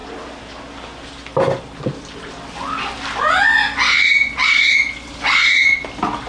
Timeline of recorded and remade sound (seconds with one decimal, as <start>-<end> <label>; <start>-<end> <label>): 0.0-6.3 recorded

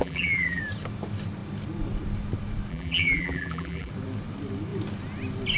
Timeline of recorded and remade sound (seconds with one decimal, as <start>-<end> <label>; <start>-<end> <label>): 0.0-0.6 remade; 0.6-2.7 recorded; 2.7-3.9 remade; 3.9-5.6 recorded

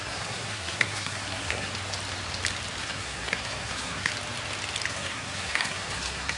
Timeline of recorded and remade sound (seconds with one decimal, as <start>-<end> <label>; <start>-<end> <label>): 0.0-1.7 remade; 1.7-2.8 recorded; 2.8-4.1 remade; 4.1-4.9 recorded; 4.9-6.4 remade

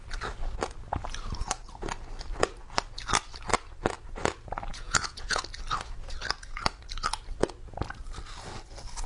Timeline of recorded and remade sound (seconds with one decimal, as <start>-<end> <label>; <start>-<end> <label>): 0.0-4.7 recorded; 4.7-5.4 remade; 5.4-9.1 recorded

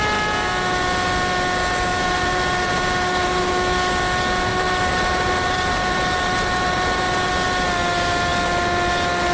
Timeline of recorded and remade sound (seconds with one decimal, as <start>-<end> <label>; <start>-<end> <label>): 0.0-1.9 recorded; 1.9-3.5 remade; 3.5-4.5 recorded; 4.5-7.3 remade; 7.3-9.3 recorded

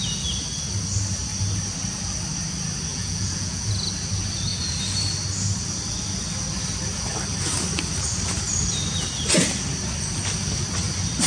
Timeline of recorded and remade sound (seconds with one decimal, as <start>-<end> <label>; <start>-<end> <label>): 0.0-2.9 recorded; 2.9-3.7 remade; 3.7-11.3 recorded

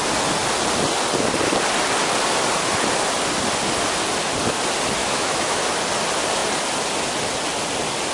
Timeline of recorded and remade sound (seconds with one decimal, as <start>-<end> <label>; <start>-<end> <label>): 0.0-5.0 recorded; 5.0-5.6 remade; 5.6-8.1 recorded